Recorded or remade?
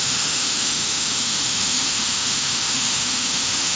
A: remade